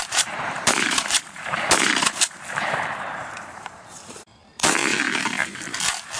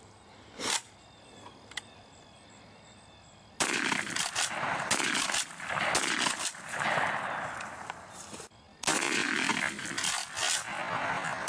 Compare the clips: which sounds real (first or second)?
second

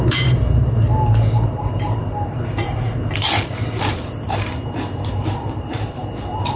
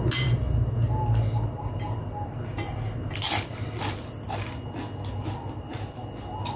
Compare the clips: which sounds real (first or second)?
second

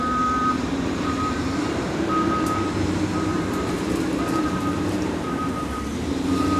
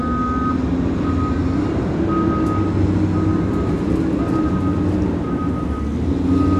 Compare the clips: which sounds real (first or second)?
second